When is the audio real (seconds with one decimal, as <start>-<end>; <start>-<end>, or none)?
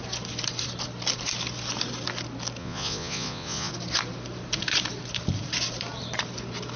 0.0-2.6; 3.7-6.8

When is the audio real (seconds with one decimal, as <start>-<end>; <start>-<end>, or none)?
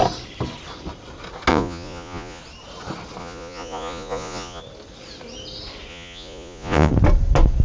0.0-1.5; 2.4-3.2; 4.6-5.9; 6.9-7.6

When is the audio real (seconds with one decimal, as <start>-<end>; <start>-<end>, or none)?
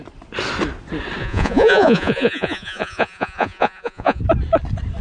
0.0-1.2; 4.2-5.0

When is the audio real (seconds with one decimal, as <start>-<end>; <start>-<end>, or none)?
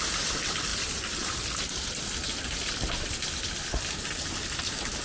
0.0-5.0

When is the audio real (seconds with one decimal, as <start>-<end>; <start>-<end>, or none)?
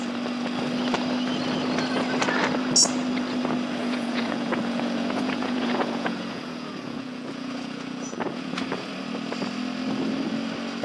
0.0-3.8; 8.9-10.8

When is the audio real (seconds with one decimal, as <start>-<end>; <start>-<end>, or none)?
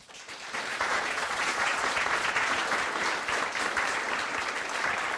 0.0-0.7; 2.6-5.2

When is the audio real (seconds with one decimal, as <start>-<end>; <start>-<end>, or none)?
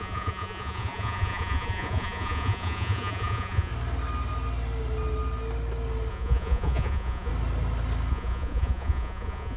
3.7-6.1; 7.3-8.1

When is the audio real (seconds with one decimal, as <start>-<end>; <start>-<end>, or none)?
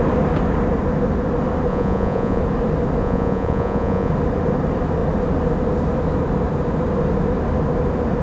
0.0-1.7; 2.4-3.0; 4.1-8.2